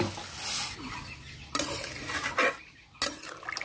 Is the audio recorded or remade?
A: recorded